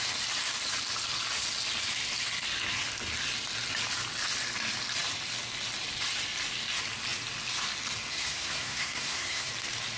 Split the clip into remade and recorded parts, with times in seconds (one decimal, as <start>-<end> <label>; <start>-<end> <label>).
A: 0.0-8.1 recorded; 8.1-9.5 remade; 9.5-10.0 recorded

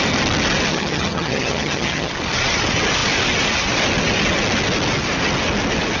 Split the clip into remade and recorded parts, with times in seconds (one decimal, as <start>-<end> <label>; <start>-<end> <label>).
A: 0.0-0.7 recorded; 0.7-2.1 remade; 2.1-6.0 recorded

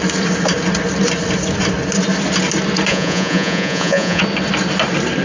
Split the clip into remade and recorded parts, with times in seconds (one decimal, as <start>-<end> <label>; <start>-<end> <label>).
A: 0.0-2.9 recorded; 2.9-4.2 remade; 4.2-5.2 recorded

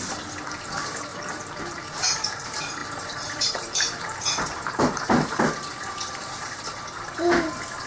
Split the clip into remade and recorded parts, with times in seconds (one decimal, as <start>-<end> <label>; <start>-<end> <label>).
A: 0.0-1.1 recorded; 1.1-2.4 remade; 2.4-2.8 recorded; 2.8-5.4 remade; 5.4-7.9 recorded

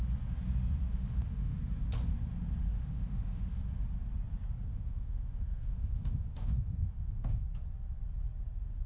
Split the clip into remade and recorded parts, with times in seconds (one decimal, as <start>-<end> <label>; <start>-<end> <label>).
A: 0.0-0.9 recorded; 0.9-1.6 remade; 1.6-2.7 recorded; 2.7-3.6 remade; 3.6-4.7 recorded; 4.7-7.4 remade; 7.4-8.9 recorded

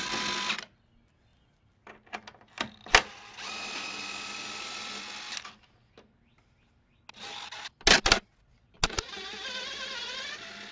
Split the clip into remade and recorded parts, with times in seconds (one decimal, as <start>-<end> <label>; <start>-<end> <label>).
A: 0.0-10.7 recorded